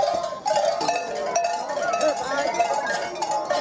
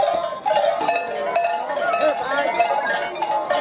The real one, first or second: second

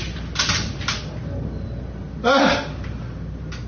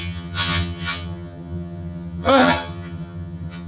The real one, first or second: first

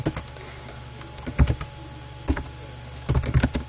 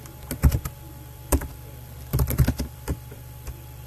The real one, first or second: first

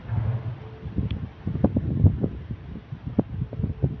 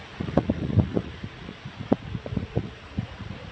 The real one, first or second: first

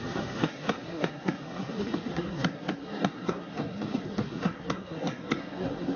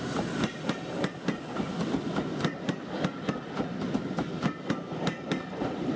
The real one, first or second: second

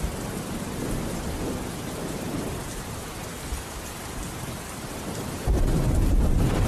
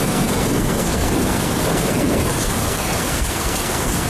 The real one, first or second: first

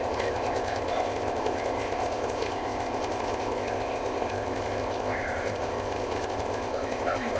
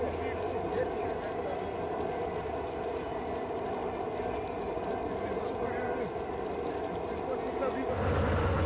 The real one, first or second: second